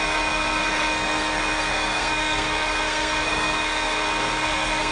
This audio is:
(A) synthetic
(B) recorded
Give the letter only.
A